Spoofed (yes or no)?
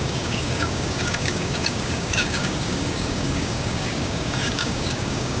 yes